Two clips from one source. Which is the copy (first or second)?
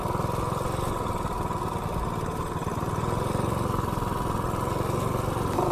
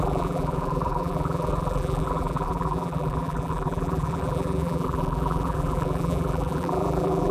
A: second